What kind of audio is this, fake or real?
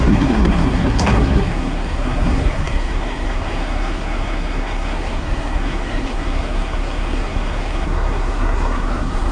fake